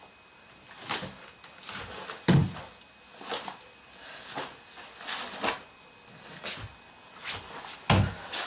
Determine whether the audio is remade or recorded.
recorded